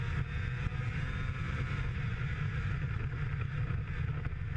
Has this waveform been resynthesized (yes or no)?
no